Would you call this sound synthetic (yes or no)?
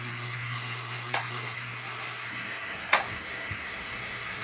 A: yes